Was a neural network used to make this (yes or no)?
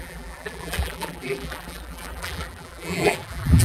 yes